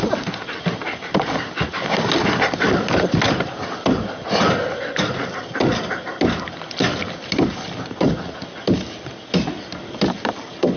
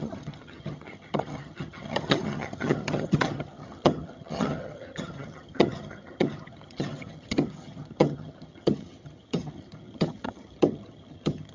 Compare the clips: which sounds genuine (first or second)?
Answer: first